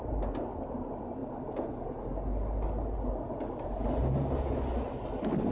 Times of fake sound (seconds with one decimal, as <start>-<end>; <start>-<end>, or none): none

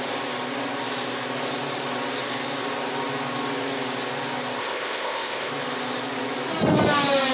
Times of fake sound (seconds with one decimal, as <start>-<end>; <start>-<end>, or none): 4.6-5.5

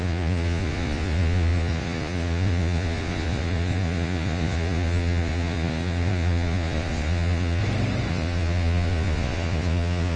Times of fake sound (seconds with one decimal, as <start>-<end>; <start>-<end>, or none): 0.0-7.6; 8.1-10.2

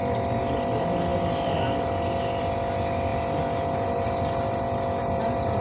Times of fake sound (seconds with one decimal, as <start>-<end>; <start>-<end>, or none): none

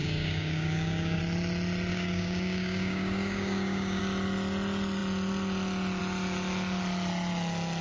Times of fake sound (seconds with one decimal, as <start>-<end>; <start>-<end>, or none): 0.0-1.2; 1.9-4.0

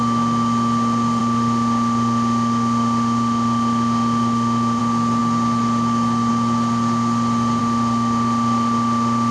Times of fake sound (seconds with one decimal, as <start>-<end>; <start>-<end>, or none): 1.2-4.8; 7.6-9.3

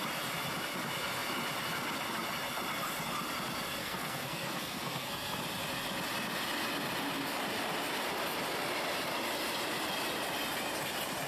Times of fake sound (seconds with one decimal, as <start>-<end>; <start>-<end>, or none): 3.8-5.4

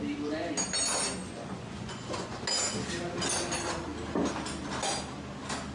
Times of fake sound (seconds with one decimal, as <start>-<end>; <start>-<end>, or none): 1.2-2.4